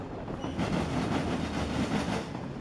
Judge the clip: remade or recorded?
recorded